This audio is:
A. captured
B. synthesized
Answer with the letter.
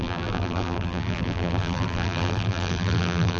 B